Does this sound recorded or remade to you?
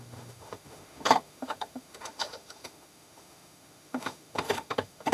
remade